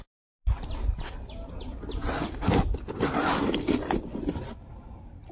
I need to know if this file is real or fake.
real